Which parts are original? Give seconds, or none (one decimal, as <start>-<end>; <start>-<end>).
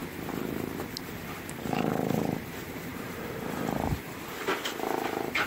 0.0-1.6